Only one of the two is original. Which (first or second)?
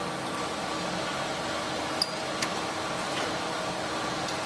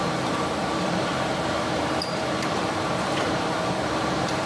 first